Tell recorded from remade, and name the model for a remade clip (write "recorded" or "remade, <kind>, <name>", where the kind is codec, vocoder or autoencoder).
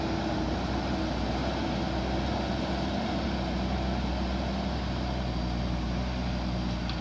recorded